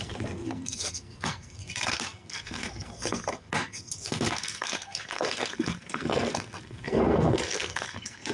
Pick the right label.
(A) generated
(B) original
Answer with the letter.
A